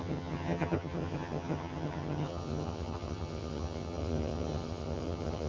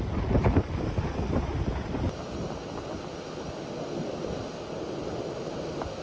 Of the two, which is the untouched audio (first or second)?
second